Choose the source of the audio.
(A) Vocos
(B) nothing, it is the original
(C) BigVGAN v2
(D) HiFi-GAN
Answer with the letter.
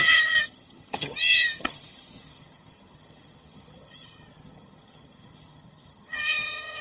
D